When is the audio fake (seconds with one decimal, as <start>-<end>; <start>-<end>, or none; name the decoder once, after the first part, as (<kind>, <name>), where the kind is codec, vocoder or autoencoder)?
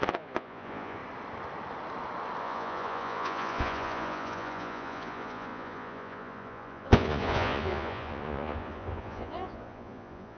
0.0-1.0 (vocoder, Vocos); 2.4-10.4